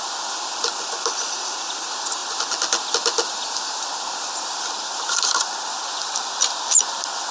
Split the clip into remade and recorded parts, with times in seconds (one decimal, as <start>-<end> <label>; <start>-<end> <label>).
0.0-7.3 recorded